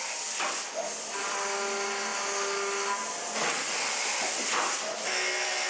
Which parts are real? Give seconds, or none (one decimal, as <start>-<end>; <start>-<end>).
0.0-5.7